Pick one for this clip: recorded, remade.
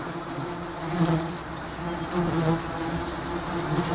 recorded